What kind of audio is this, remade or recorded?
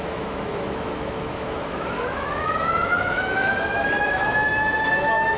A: remade